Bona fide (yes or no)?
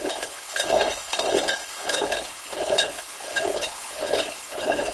no